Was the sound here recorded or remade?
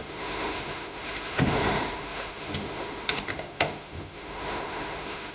remade